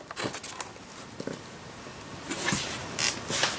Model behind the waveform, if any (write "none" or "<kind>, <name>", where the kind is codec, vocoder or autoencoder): none